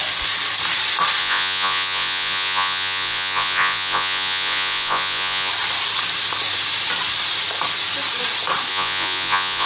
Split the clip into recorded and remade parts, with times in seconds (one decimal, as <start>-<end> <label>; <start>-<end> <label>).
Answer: 0.0-1.2 recorded; 1.2-5.5 remade; 5.5-8.7 recorded; 8.7-9.7 remade